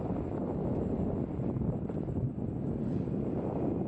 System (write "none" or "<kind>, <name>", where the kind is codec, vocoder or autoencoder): none